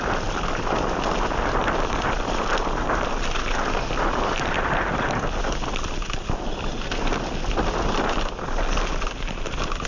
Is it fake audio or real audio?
real